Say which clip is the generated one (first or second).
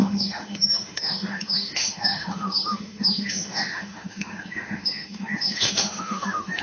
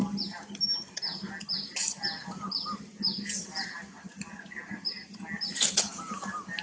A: first